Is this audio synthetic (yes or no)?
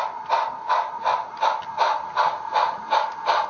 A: no